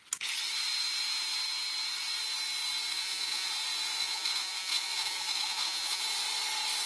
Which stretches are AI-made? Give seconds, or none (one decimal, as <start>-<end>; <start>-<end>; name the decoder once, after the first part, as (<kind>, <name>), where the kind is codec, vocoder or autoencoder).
2.9-3.5 (vocoder, Vocos); 4.0-6.0

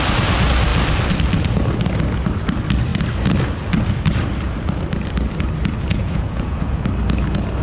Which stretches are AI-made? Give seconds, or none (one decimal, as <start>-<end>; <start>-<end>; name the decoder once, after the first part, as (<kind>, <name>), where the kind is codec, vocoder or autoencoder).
5.9-6.8 (vocoder, Vocos)

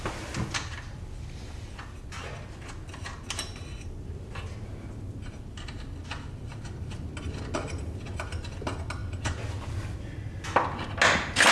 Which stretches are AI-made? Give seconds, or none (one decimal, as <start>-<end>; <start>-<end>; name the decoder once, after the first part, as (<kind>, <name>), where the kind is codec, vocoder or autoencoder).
none